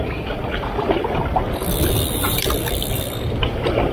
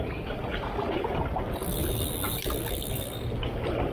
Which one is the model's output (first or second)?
first